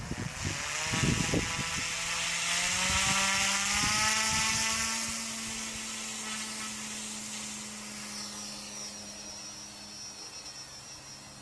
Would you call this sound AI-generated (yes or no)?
no